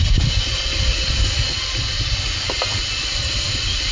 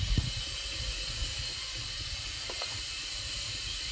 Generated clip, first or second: second